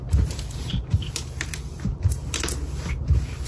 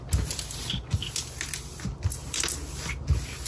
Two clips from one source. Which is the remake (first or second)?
first